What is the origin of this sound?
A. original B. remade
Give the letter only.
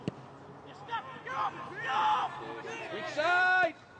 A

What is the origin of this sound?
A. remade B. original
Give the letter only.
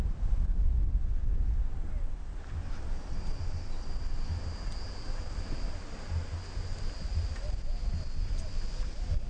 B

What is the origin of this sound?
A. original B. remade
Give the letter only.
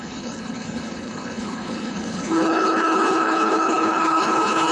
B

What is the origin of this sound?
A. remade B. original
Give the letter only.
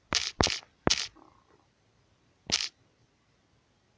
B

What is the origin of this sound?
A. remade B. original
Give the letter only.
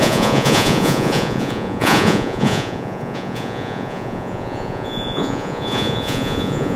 A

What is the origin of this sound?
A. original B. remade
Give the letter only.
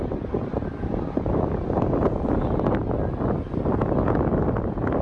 A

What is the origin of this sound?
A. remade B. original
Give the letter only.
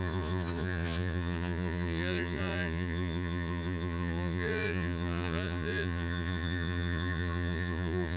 A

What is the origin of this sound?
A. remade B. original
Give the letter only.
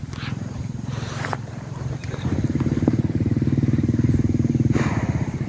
A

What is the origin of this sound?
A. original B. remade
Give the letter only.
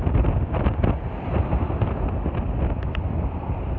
A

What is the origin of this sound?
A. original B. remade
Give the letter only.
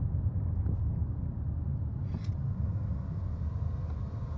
A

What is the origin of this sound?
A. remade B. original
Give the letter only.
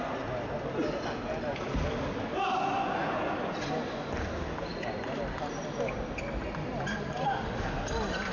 B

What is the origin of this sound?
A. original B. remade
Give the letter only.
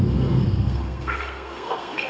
B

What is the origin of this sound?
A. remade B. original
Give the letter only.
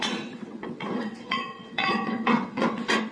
A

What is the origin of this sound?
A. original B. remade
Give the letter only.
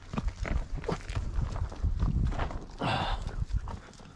A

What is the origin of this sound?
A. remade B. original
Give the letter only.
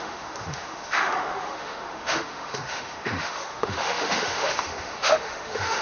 A